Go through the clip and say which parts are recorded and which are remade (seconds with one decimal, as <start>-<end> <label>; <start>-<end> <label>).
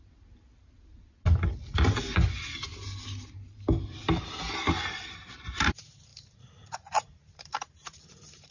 0.0-6.1 recorded; 6.1-8.5 remade